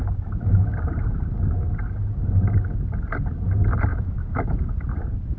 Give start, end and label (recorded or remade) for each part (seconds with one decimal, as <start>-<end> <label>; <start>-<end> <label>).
0.0-3.9 recorded; 3.9-4.9 remade; 4.9-5.4 recorded